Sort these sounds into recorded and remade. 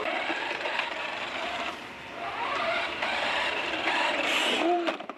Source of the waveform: remade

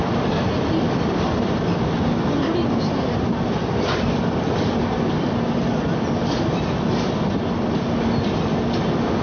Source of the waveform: recorded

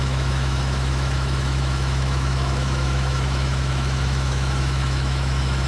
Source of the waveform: remade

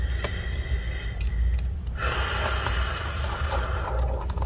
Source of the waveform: recorded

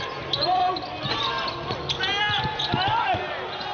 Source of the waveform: recorded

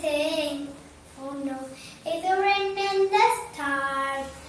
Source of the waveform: recorded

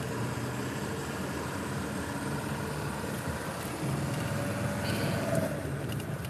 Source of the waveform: recorded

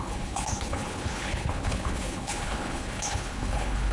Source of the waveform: remade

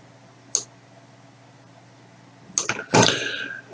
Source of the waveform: recorded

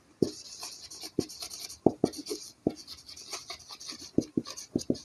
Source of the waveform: recorded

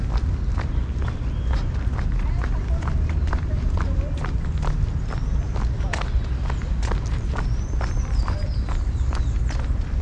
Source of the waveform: recorded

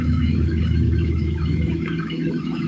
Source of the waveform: remade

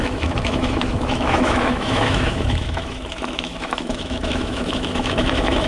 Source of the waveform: remade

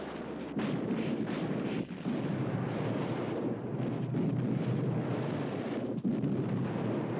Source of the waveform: recorded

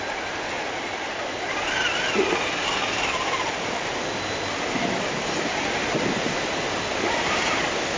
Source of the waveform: recorded